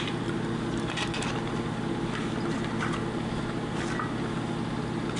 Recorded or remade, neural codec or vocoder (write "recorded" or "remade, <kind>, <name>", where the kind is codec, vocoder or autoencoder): recorded